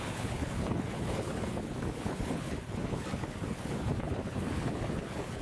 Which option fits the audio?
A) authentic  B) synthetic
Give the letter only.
B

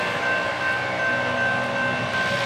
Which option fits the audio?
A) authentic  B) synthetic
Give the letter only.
A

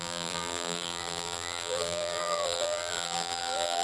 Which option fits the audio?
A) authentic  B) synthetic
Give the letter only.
B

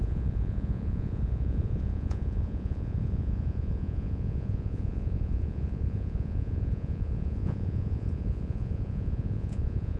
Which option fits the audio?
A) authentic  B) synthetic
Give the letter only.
B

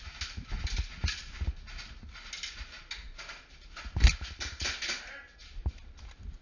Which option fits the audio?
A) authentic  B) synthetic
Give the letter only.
A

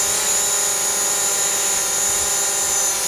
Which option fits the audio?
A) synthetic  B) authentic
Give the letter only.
B